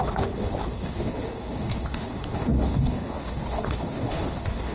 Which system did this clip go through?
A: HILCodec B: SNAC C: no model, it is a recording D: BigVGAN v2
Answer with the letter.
A